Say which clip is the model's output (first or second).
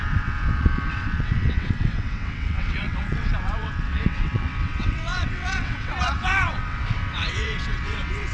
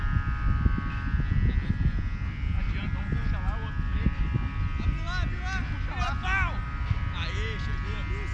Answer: first